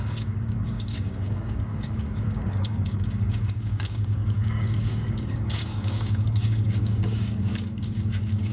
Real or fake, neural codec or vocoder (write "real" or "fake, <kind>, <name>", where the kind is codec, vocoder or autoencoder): fake, codec, DAC